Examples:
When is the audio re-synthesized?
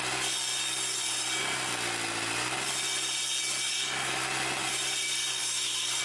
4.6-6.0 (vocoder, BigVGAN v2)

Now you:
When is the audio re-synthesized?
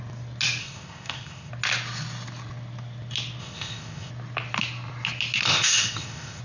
0.6-1.5 (codec, ZipCodec); 3.4-4.1; 5.5-6.4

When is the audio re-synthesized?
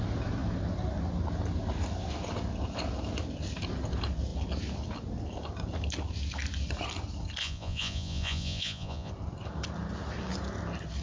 7.4-9.1 (vocoder, Vocos)